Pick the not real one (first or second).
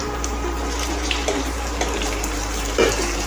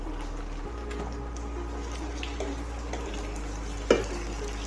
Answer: first